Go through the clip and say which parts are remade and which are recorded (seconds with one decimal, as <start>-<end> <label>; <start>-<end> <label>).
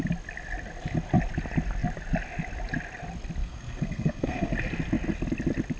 0.0-3.4 recorded; 3.4-4.5 remade; 4.5-5.8 recorded